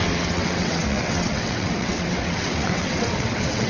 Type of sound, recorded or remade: remade